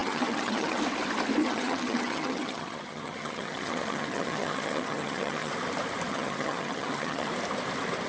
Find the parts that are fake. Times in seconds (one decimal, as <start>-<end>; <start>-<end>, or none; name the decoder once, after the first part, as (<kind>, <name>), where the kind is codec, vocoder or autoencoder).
0.0-0.8 (vocoder, HiFi-GAN); 1.4-5.5; 6.1-7.3